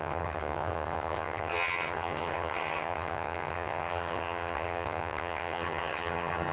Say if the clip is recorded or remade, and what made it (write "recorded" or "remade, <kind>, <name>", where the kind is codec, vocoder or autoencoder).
remade, vocoder, HiFi-GAN